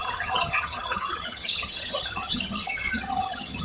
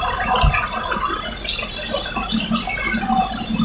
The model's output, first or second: first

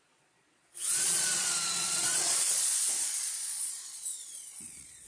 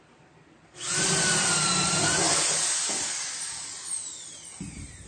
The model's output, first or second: first